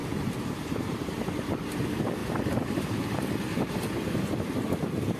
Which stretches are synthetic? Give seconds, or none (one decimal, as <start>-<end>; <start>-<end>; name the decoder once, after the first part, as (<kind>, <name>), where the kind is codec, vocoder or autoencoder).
0.0-1.8 (vocoder, BigVGAN v2); 2.2-3.3